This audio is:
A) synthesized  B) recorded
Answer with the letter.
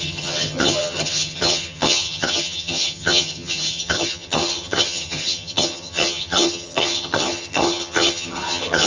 A